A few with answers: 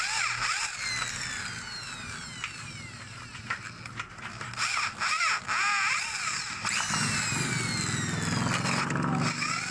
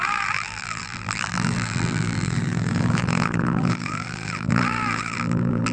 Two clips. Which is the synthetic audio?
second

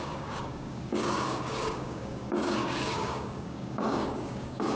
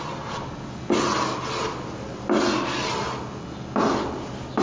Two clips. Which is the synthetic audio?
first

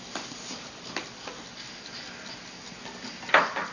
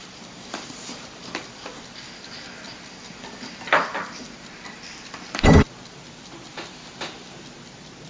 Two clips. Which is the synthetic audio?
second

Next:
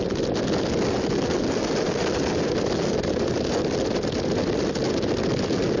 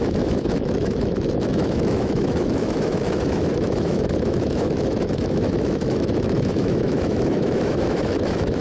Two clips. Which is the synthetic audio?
second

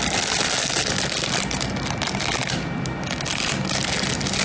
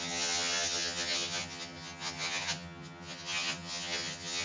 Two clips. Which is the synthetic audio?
second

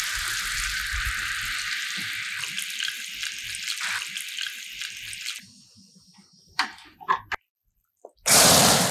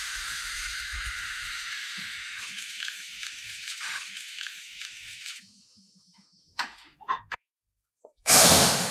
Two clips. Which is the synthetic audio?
second